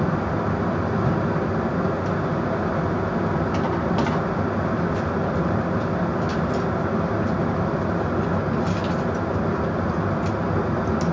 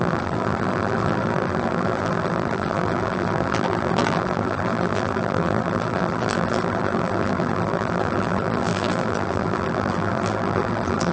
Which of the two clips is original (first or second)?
first